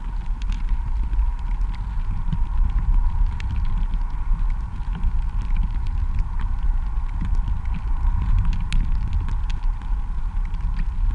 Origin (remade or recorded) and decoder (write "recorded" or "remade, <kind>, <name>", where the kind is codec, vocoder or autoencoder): recorded